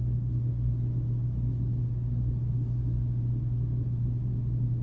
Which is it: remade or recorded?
recorded